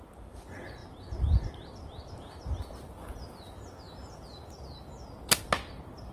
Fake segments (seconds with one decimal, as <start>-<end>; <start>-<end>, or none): none